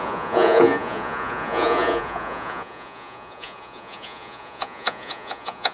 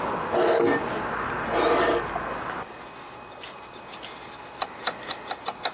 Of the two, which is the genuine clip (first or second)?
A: second